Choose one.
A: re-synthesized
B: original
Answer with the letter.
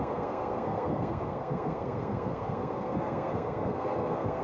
A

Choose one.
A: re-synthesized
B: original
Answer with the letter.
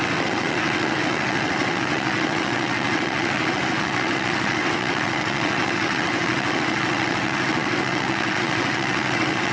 A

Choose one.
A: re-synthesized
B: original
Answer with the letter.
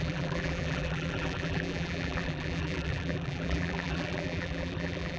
A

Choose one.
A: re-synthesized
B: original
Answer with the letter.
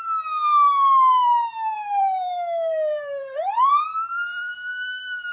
A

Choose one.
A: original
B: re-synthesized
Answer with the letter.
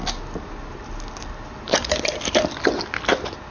A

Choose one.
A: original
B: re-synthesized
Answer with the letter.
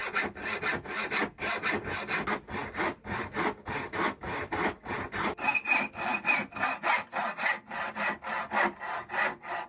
A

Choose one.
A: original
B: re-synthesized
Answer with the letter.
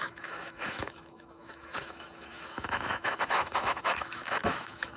B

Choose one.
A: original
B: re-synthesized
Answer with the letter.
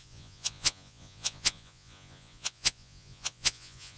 B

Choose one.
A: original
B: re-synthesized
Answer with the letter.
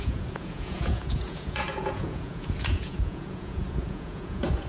B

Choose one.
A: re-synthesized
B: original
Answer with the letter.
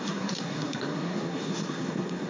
A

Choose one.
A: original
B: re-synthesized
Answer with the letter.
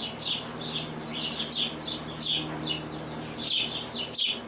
A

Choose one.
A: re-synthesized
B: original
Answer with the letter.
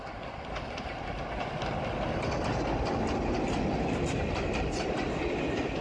B